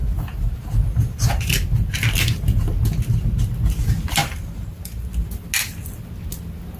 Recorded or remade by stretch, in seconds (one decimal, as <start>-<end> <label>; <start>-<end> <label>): 0.0-4.2 recorded; 4.2-5.1 remade; 5.1-6.8 recorded